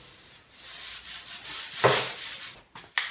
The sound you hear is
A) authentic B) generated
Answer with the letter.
A